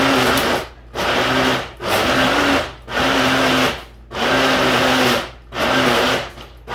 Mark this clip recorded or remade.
recorded